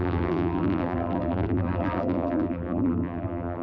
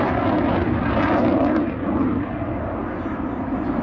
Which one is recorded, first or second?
second